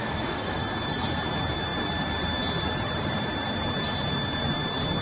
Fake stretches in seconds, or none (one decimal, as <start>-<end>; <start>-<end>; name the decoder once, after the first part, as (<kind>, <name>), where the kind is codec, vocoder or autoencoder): 0.0-0.6 (codec, DAC)